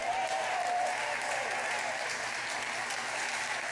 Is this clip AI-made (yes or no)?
yes